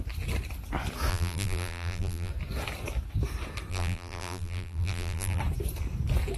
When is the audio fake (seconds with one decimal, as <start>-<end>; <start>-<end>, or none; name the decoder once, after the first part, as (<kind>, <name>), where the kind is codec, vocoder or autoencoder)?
1.1-2.3 (vocoder, BigVGAN v2); 3.7-5.4